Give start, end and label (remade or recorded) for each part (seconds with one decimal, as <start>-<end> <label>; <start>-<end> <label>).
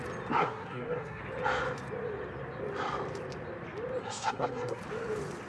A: 0.0-0.4 recorded; 0.4-1.2 remade; 1.2-4.0 recorded; 4.0-4.8 remade; 4.8-5.5 recorded